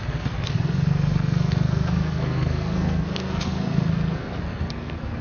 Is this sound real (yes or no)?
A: no